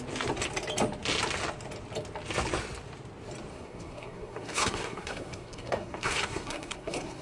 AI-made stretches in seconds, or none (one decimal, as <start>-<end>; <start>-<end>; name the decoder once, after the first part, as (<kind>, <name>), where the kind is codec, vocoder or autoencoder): 3.5-7.2 (codec, SNAC)